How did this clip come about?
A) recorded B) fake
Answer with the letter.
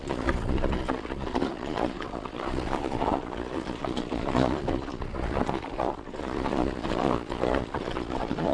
B